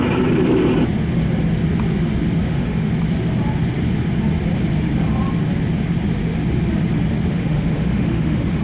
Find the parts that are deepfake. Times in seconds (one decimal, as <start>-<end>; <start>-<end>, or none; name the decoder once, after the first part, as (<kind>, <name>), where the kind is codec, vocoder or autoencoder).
2.4-2.9 (autoencoder, DAC-VAE); 7.3-8.6